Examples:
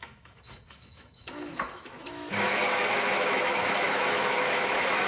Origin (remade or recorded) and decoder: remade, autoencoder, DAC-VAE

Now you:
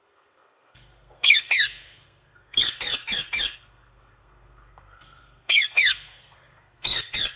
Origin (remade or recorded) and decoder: remade, codec, SNAC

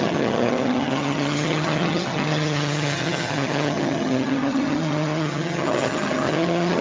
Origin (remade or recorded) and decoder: remade, vocoder, HiFi-GAN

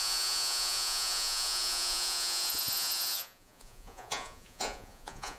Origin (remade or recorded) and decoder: remade, vocoder, Vocos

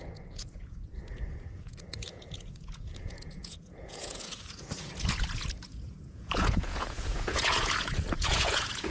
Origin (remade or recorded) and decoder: remade, vocoder, Vocos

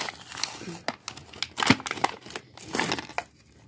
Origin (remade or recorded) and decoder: recorded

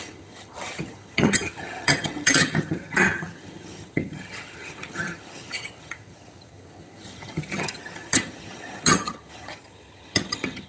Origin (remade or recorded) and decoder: remade, vocoder, HiFi-GAN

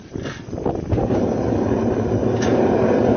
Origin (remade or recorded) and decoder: recorded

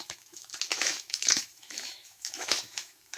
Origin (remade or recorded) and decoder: remade, autoencoder, DAC-VAE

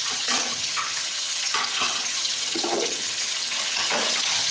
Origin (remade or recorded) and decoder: remade, vocoder, HiFi-GAN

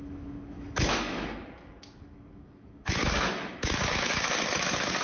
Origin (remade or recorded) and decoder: remade, autoencoder, DAC-VAE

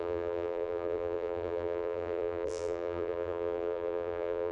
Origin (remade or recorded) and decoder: remade, vocoder, BigVGAN v2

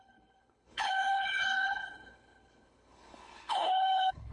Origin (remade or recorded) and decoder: remade, codec, HILCodec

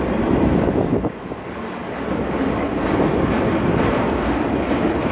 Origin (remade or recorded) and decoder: recorded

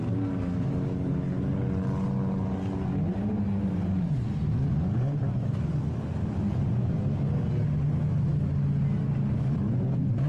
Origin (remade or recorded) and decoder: recorded